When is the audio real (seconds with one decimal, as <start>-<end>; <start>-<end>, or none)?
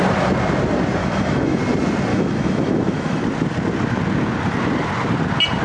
0.0-1.0; 1.6-2.1; 3.2-5.6